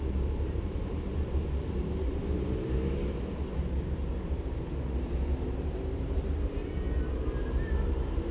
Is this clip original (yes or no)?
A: no